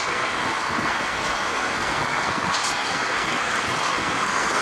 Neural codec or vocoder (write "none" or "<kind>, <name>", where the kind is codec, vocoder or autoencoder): codec, SNAC